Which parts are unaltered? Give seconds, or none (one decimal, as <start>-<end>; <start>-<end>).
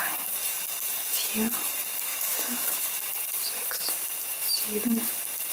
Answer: 0.0-2.1; 2.7-5.5